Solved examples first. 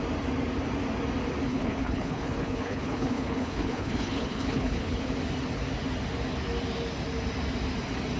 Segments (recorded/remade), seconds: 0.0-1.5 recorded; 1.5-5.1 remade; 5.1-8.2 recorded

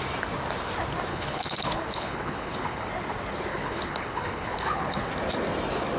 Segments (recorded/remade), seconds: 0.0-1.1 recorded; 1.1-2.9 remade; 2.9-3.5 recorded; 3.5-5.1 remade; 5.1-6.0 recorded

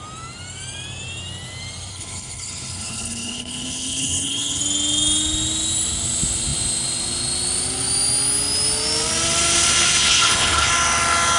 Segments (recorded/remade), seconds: 0.0-1.9 recorded; 1.9-4.6 remade; 4.6-10.0 recorded; 10.0-10.7 remade; 10.7-11.4 recorded

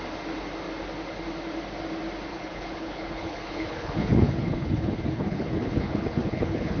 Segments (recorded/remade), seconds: 0.0-2.3 recorded; 2.3-6.8 remade

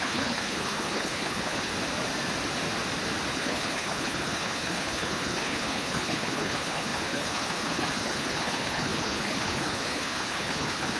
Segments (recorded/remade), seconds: 0.0-1.7 remade; 1.7-3.3 recorded; 3.3-11.0 remade